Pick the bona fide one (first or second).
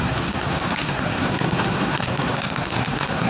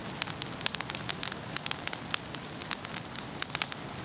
second